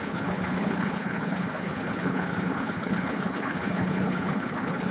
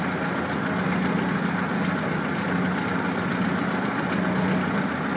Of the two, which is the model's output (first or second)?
first